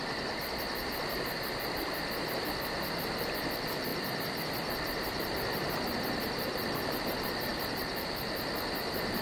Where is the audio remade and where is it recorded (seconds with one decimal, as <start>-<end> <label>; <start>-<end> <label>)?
0.0-9.2 recorded